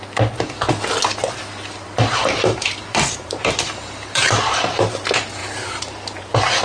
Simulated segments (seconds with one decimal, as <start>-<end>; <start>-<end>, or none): 2.2-4.6; 5.4-6.6